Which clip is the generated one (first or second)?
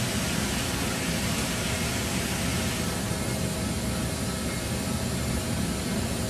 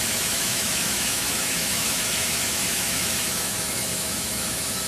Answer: second